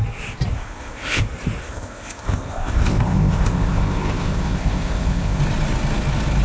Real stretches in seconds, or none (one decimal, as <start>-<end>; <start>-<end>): 0.0-0.5; 1.2-1.6; 5.4-6.4